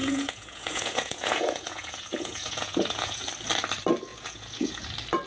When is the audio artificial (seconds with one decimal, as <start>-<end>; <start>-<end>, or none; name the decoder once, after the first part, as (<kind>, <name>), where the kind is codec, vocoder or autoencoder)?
0.0-3.2 (vocoder, Vocos); 4.1-4.8